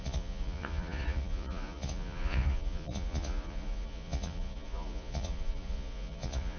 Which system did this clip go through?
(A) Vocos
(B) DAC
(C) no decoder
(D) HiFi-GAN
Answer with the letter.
A